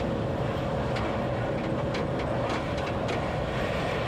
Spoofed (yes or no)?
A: no